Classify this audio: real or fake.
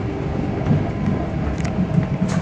real